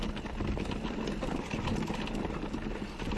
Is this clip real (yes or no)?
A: yes